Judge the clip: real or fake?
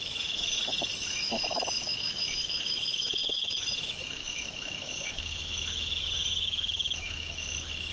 fake